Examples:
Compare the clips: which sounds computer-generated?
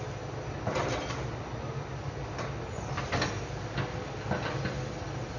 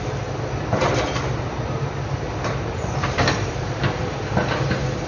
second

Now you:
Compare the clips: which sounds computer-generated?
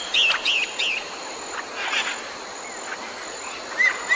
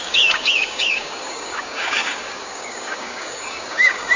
second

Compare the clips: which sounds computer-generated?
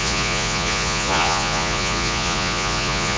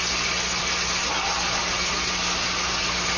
first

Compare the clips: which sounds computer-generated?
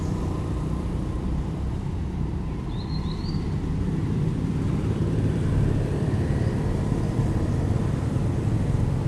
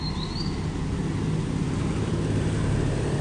first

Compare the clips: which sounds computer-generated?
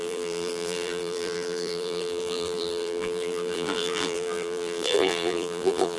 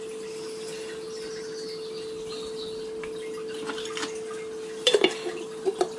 first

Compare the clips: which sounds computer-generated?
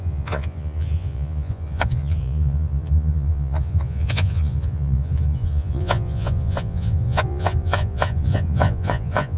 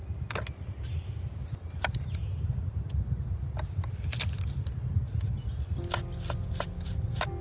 first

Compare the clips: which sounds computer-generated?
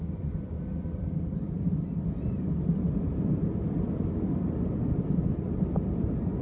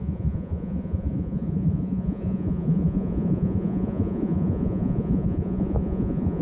second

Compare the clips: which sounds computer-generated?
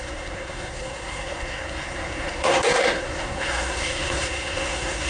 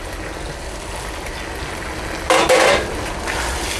first